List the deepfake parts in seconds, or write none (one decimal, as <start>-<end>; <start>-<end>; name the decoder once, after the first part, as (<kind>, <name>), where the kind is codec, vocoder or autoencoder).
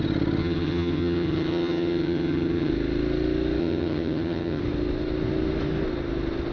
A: 0.4-2.7 (vocoder, HiFi-GAN); 3.6-4.6